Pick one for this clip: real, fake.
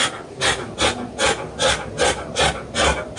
real